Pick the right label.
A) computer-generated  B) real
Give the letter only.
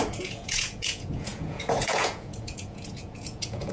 A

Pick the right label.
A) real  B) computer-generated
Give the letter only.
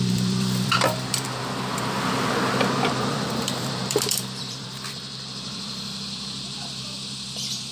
B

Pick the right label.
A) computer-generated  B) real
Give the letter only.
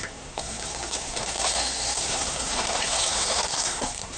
A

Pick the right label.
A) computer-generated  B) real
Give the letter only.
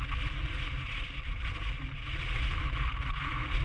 B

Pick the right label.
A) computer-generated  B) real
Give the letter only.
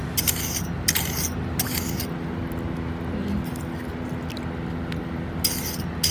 B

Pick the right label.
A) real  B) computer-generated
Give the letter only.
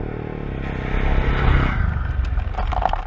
A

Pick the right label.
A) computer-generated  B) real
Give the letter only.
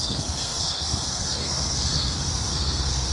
A